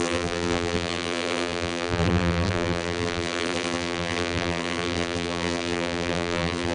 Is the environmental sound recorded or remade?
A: remade